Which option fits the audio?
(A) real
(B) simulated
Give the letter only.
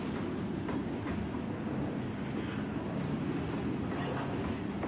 A